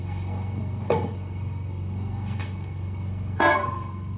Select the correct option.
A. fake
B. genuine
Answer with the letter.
A